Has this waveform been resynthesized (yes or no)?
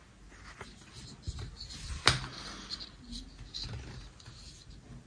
no